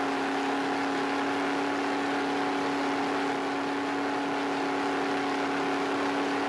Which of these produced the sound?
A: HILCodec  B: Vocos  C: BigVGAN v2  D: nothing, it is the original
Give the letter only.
D